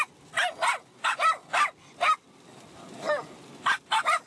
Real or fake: real